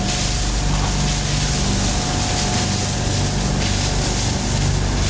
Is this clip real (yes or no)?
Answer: yes